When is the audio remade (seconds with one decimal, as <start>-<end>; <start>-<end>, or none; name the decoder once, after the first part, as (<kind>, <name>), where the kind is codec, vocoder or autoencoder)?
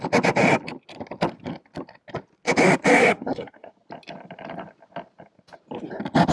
3.0-3.7 (codec, SNAC)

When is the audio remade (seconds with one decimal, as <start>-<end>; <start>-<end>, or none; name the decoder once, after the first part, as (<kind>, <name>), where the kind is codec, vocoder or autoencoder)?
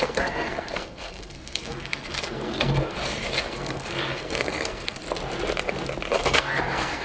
0.0-5.0 (codec, SNAC); 6.1-7.0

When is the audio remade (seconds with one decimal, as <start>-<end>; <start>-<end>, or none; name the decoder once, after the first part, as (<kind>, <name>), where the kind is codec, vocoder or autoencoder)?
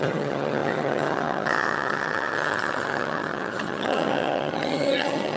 0.0-5.4 (vocoder, HiFi-GAN)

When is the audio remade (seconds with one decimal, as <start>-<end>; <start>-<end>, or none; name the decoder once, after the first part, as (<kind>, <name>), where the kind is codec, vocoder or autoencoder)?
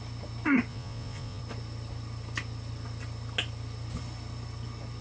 0.7-1.4 (vocoder, Vocos)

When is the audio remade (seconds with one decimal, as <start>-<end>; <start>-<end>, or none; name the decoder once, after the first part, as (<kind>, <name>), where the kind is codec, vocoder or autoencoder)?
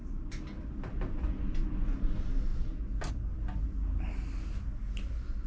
none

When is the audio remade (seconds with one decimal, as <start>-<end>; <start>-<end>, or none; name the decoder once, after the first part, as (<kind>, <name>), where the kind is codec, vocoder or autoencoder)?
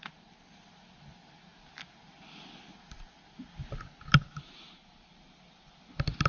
none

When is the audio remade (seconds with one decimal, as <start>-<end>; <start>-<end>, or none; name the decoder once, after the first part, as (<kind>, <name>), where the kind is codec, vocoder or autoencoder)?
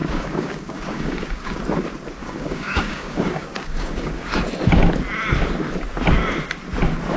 0.0-1.6 (codec, DAC); 2.2-4.4